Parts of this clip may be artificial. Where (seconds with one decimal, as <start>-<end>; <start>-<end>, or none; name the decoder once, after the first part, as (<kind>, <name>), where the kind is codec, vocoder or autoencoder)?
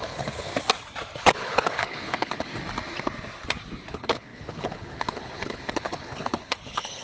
0.0-0.5 (codec, HILCodec); 1.2-2.5; 3.9-7.0